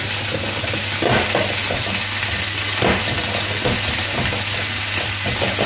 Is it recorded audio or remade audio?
recorded